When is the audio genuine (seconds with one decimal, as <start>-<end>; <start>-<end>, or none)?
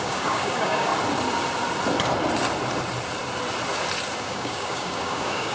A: 0.9-4.2